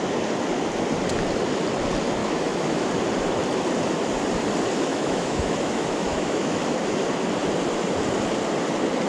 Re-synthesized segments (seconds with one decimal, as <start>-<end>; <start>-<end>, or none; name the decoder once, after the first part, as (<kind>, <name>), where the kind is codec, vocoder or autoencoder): 2.2-2.9 (autoencoder, DAC-VAE); 4.9-6.6